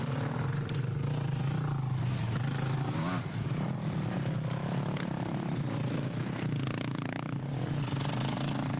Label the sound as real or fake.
real